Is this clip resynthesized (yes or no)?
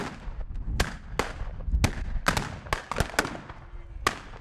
no